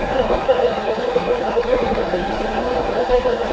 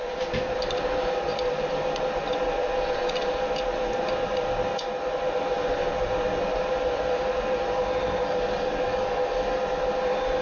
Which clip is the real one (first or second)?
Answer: second